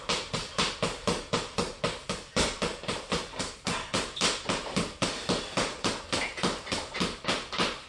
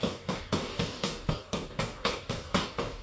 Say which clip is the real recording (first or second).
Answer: first